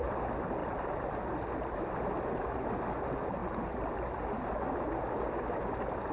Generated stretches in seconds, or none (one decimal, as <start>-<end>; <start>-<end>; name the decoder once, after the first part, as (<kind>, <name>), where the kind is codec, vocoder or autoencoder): none